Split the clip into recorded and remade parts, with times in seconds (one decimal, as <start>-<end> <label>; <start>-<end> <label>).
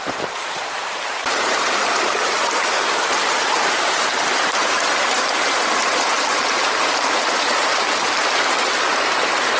0.0-9.6 remade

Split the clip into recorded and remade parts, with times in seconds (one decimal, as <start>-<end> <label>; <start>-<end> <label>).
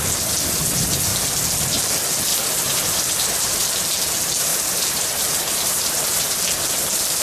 0.0-2.3 recorded; 2.3-3.6 remade; 3.6-4.5 recorded; 4.5-6.2 remade; 6.2-7.2 recorded